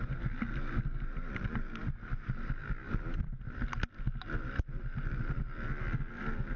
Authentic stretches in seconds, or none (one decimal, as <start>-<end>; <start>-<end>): 0.0-6.6

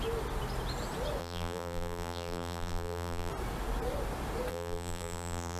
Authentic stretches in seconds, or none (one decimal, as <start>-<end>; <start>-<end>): 0.0-1.2; 3.3-4.5

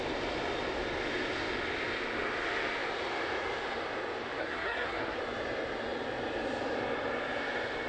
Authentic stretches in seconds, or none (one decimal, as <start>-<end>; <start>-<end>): 0.0-4.4; 5.2-7.9

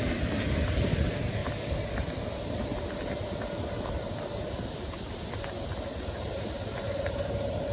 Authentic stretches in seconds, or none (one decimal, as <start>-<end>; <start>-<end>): 1.4-6.0

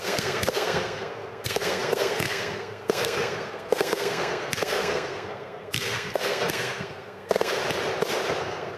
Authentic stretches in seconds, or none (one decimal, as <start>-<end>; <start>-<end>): 7.6-8.4

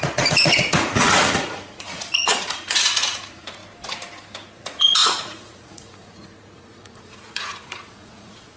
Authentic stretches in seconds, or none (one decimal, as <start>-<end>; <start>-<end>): 3.6-4.5

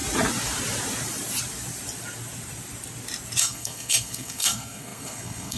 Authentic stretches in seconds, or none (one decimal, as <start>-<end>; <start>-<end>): 0.0-3.4

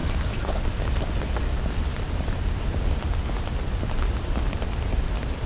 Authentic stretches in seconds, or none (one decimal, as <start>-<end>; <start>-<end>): 0.0-5.5